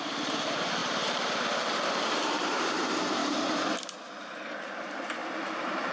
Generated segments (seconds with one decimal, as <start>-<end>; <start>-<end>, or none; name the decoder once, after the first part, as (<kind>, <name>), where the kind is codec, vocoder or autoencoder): 0.0-3.2 (vocoder, BigVGAN v2); 4.1-5.9